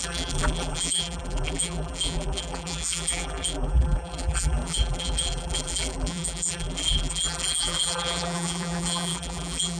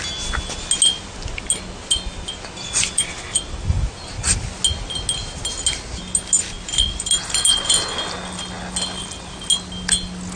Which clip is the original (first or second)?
second